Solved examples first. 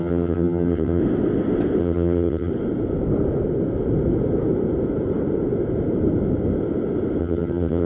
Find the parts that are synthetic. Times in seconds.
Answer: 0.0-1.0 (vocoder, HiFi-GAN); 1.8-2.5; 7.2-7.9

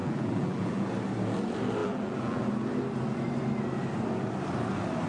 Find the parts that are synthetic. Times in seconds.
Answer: 0.0-0.8 (vocoder, BigVGAN v2); 1.8-2.5

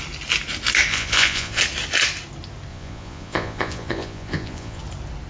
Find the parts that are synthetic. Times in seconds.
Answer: 0.9-1.6 (vocoder, Vocos); 2.7-4.8